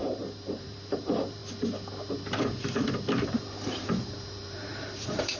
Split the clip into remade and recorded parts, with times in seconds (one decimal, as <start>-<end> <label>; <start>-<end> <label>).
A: 0.0-1.4 remade; 1.4-3.3 recorded; 3.3-5.4 remade